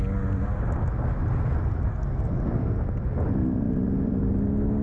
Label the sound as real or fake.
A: real